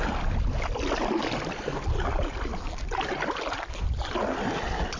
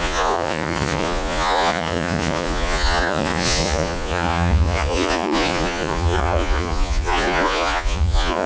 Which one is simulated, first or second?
second